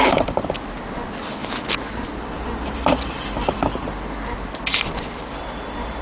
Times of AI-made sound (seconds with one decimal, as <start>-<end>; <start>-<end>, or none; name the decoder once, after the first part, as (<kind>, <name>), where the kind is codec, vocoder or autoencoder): 1.4-1.9 (autoencoder, DAC-VAE)